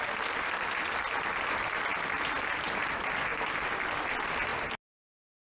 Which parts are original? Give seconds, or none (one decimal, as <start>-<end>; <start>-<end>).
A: 0.0-5.5